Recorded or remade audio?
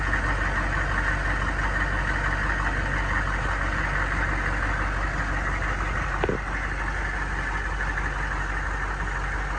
recorded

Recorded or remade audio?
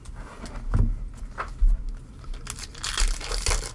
recorded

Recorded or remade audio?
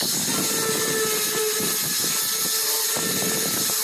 recorded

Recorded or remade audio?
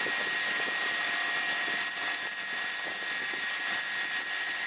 recorded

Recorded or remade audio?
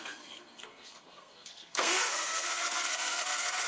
remade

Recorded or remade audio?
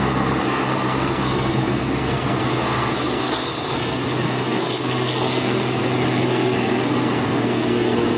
remade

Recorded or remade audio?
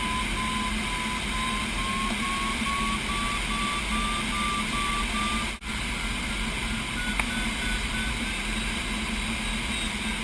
recorded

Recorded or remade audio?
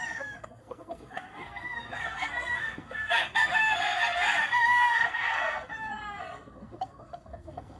remade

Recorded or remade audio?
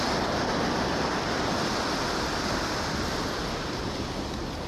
recorded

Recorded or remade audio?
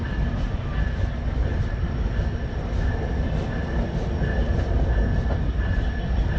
recorded